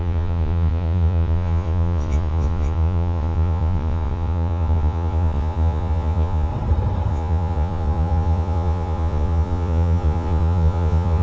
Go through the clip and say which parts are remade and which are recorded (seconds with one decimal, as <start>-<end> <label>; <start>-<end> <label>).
0.0-6.5 remade; 6.5-7.1 recorded; 7.1-11.2 remade